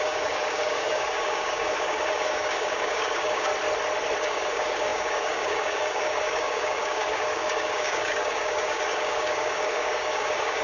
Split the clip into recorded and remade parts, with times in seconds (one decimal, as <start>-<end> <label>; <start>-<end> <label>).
0.0-3.5 remade; 3.5-4.2 recorded; 4.2-10.6 remade